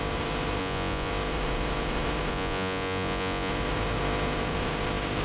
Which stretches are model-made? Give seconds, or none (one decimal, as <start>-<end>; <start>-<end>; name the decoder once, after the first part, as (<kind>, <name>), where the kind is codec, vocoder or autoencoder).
0.6-1.1 (vocoder, Vocos); 2.3-3.5